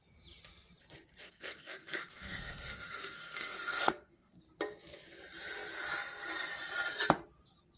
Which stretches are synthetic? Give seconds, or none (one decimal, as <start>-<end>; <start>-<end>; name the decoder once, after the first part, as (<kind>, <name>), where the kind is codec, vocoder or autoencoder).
1.2-4.4 (codec, SNAC)